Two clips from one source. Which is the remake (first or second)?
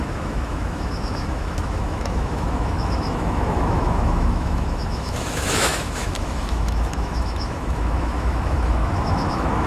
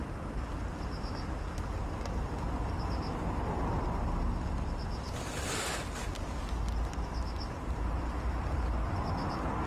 first